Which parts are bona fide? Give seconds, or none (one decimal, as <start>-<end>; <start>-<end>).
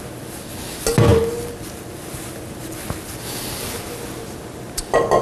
0.0-5.2